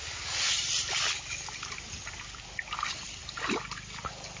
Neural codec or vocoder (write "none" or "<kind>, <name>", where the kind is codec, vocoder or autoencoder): none